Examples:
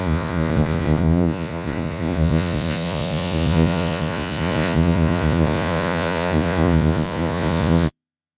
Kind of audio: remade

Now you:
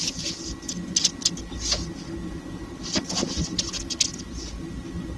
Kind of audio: recorded